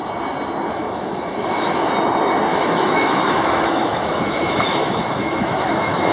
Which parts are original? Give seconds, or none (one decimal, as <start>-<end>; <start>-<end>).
0.0-0.7; 1.9-2.5